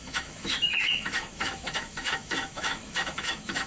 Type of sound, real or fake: fake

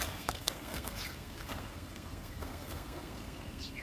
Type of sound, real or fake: fake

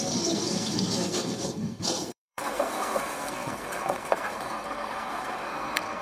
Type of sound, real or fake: fake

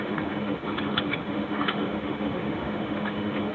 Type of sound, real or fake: fake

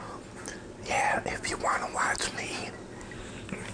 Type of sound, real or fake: real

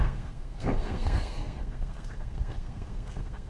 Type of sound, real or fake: fake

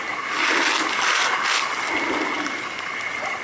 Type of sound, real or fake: real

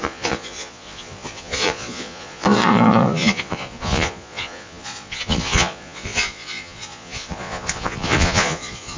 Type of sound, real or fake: fake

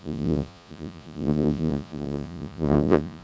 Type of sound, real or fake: fake